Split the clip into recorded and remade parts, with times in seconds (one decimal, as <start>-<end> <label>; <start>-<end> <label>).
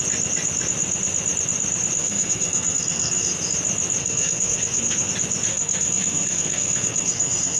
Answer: 0.0-2.0 recorded; 2.0-3.3 remade; 3.3-4.0 recorded; 4.0-5.1 remade; 5.1-5.5 recorded; 5.5-7.6 remade